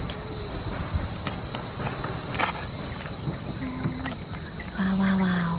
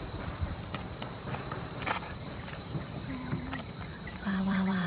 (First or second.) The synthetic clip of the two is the second